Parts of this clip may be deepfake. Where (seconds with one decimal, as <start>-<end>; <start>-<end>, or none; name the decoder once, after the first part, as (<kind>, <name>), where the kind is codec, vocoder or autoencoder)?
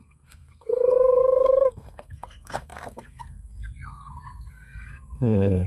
0.0-5.7 (codec, SNAC)